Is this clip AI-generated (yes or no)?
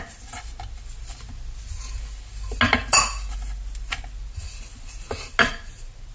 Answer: no